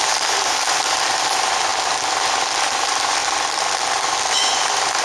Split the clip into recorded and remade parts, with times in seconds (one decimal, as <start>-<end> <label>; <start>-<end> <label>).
0.0-1.7 remade; 1.7-2.6 recorded; 2.6-3.2 remade; 3.2-4.3 recorded; 4.3-5.0 remade